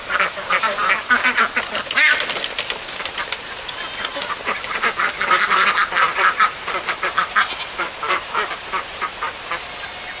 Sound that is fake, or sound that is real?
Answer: real